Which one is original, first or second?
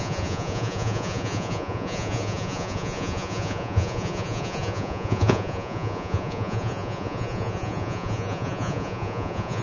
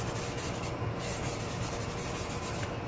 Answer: second